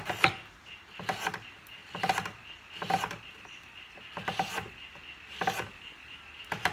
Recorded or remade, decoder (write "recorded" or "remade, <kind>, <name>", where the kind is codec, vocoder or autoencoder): recorded